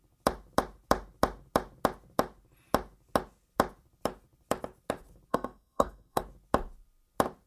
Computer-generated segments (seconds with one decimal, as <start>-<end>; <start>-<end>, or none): 5.3-6.2